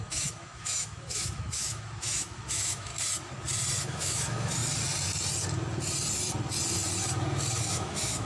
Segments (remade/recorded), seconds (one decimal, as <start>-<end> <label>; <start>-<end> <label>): 0.0-2.9 remade; 2.9-3.8 recorded; 3.8-4.6 remade; 4.6-7.6 recorded; 7.6-8.2 remade